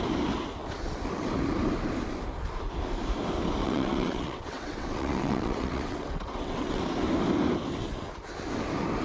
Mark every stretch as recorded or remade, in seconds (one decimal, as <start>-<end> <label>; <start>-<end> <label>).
0.0-3.6 recorded; 3.6-6.8 remade; 6.8-9.0 recorded